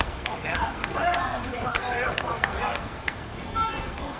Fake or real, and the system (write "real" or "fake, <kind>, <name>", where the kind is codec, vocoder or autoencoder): fake, codec, SNAC